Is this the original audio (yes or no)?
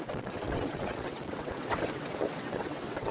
no